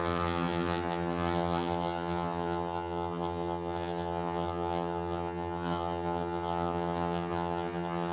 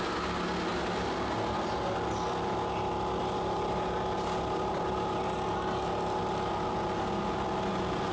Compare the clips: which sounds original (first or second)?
second